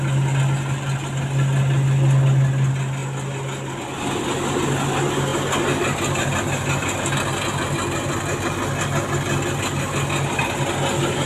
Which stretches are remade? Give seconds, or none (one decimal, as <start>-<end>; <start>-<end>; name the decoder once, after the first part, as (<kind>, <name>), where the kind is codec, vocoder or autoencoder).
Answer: none